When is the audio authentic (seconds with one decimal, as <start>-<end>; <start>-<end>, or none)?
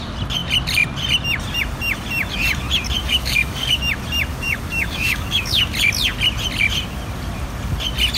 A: 0.0-3.0; 3.8-4.3; 5.6-8.2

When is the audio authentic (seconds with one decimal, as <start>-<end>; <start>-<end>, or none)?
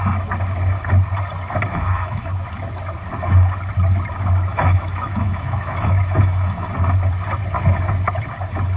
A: 0.0-1.7; 2.3-4.5; 6.7-8.8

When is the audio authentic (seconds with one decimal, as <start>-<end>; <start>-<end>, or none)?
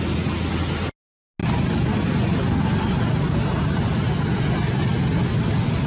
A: 0.0-5.9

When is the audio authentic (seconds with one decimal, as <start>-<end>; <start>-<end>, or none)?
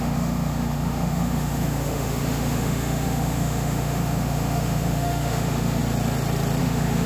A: 5.8-6.6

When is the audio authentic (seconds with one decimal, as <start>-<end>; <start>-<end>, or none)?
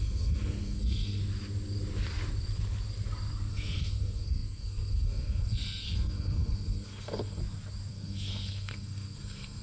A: 1.2-3.5; 7.4-7.9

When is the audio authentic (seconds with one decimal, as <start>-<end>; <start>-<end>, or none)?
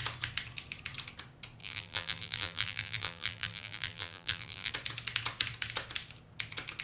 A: 0.0-1.6; 4.7-6.8